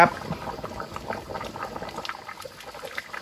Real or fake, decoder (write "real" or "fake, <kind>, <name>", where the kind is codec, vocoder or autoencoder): real